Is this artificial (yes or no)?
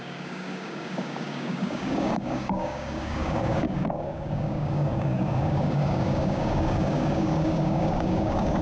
yes